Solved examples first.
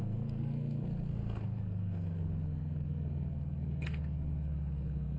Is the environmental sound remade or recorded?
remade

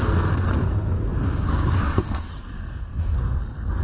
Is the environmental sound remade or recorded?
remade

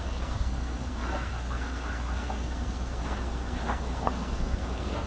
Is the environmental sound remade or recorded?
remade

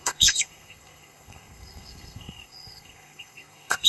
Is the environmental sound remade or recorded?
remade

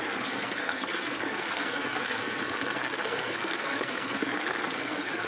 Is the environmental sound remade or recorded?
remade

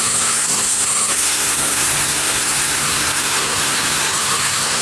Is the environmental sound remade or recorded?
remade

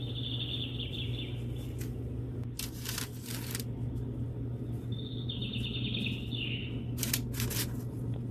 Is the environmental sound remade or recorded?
recorded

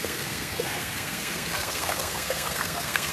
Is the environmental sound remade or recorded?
remade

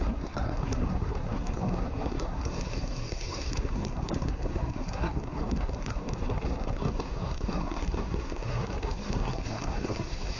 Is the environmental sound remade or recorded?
remade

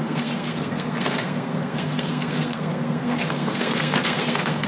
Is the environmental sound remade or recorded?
remade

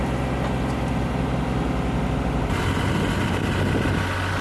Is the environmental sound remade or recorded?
recorded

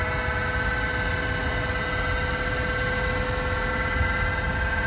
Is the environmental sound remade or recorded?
recorded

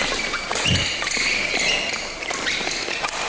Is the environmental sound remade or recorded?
recorded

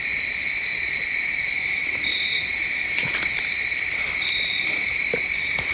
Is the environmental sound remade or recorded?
recorded